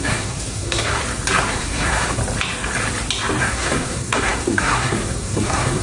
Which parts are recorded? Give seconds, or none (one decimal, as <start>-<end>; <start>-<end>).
1.0-1.5; 2.2-3.4